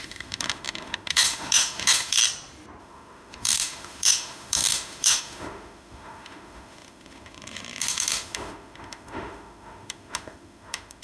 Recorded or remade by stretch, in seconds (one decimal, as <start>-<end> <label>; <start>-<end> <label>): 0.0-2.2 remade; 2.2-2.8 recorded; 2.8-11.0 remade